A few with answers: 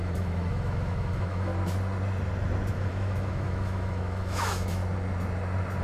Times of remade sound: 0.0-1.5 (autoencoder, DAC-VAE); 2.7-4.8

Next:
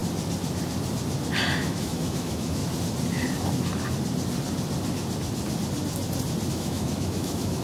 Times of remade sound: 1.5-2.6 (autoencoder, DAC-VAE); 6.5-7.6

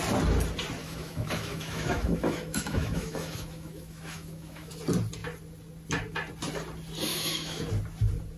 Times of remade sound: 0.8-4.7 (autoencoder, DAC-VAE); 7.1-7.6

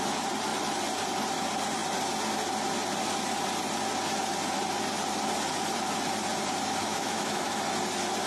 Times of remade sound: 6.8-7.6 (autoencoder, DAC-VAE)

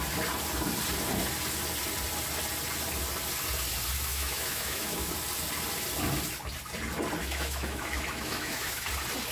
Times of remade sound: 4.1-5.1 (autoencoder, DAC-VAE); 7.2-8.9

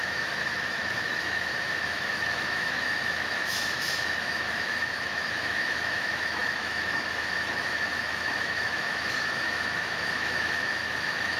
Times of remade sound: 0.0-11.4 (autoencoder, DAC-VAE)

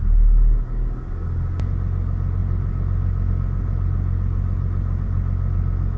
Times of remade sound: none

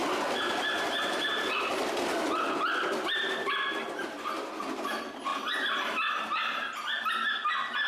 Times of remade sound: none